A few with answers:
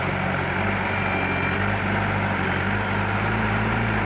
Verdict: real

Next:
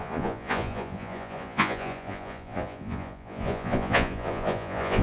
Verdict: fake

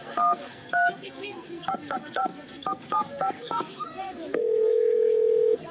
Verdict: fake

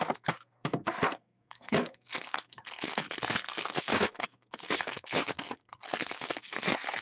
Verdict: fake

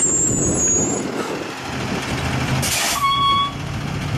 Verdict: real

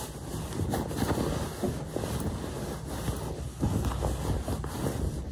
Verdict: real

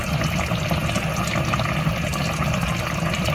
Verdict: real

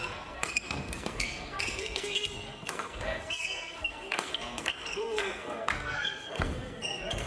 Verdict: fake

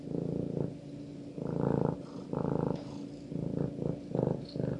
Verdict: real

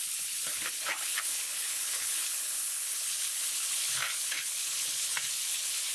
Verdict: fake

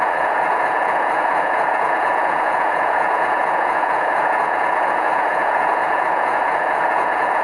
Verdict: fake